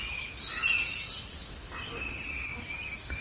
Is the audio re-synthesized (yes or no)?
no